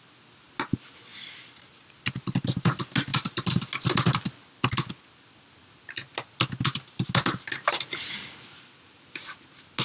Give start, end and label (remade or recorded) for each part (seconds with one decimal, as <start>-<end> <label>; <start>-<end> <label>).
0.0-9.8 recorded